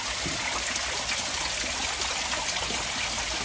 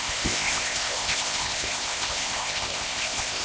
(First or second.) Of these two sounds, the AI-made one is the second